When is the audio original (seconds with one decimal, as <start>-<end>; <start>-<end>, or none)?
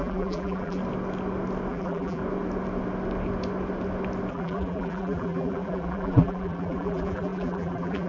0.8-1.7; 2.2-4.3